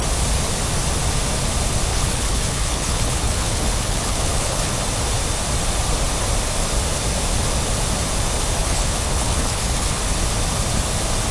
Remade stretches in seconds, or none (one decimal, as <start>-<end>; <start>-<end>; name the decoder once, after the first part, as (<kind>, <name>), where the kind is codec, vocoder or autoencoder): 1.9-4.7 (codec, HILCodec); 8.6-10.1